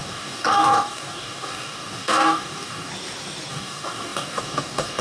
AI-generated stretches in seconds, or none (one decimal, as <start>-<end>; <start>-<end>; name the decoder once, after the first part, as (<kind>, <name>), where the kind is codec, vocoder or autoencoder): 0.0-2.9 (codec, DAC); 3.5-5.0